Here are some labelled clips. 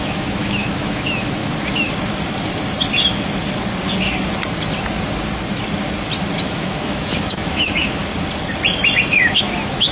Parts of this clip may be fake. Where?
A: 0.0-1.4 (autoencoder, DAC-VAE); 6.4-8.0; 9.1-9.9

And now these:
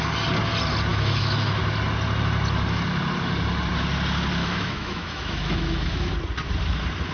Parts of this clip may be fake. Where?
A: 0.9-1.6 (autoencoder, DAC-VAE); 4.4-6.1

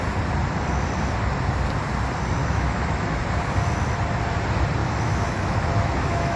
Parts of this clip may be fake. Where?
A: 2.4-3.2 (autoencoder, DAC-VAE); 4.8-6.4

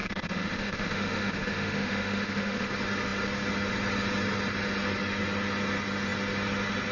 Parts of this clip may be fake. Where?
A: 0.0-2.7 (autoencoder, DAC-VAE)